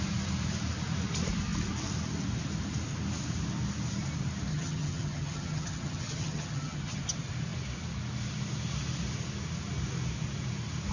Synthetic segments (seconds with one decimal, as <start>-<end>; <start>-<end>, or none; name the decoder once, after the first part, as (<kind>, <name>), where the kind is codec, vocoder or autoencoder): 4.5-7.0 (vocoder, HiFi-GAN)